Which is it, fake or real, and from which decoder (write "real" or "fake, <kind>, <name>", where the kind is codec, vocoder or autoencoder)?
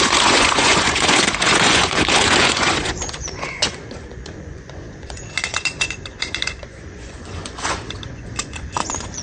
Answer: fake, vocoder, Vocos